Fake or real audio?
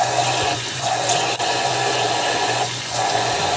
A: fake